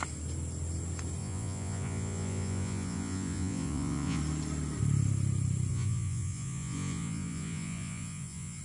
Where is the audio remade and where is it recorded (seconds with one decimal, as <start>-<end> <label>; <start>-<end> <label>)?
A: 0.0-1.2 recorded; 1.2-4.2 remade; 4.2-5.7 recorded; 5.7-8.6 remade